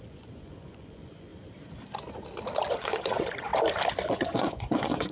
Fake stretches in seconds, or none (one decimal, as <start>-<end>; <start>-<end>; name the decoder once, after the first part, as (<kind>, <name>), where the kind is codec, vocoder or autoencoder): 0.0-1.3 (vocoder, Vocos); 2.7-3.5; 4.1-5.1